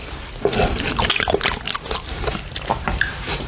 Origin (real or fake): real